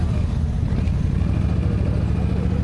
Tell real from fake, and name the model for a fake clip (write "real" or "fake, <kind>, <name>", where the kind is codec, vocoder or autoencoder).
real